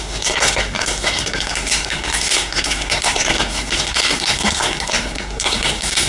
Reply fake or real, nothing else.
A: fake